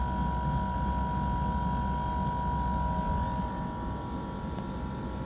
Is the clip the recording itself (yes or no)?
yes